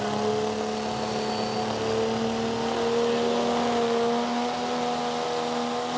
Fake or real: real